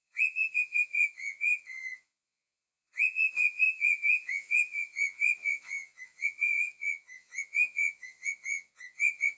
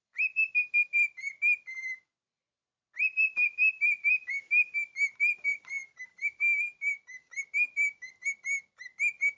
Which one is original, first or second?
second